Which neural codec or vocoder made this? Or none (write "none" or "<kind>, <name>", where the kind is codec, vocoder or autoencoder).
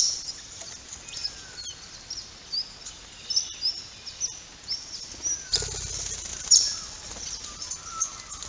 none